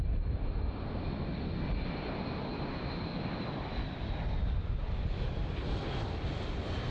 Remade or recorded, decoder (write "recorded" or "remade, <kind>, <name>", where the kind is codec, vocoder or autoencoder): recorded